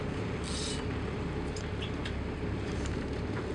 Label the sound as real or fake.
real